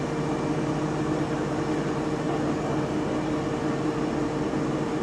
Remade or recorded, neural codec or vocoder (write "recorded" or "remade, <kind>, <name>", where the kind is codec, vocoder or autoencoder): recorded